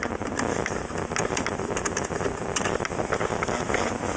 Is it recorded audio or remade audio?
recorded